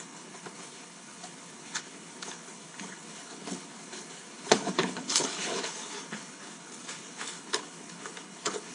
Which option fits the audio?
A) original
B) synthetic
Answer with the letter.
B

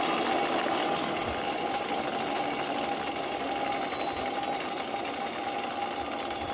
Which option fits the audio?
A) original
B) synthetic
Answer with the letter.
A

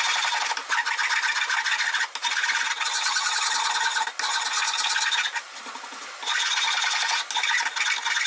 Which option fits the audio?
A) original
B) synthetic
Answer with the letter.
A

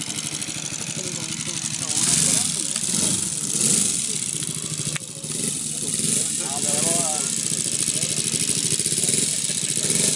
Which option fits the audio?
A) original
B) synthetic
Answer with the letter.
A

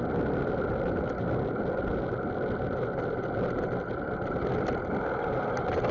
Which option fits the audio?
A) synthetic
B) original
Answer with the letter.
B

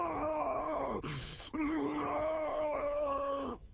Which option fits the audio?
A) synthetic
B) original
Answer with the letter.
A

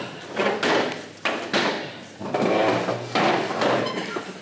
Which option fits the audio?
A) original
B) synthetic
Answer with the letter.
A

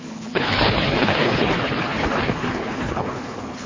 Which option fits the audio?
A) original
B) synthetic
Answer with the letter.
B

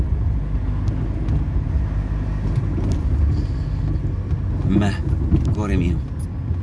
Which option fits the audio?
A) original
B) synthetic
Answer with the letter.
A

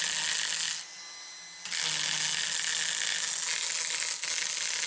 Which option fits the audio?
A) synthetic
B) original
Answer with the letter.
B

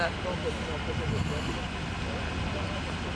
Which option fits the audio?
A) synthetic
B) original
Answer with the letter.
B